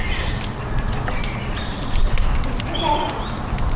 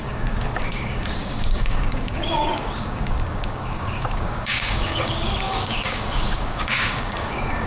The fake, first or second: second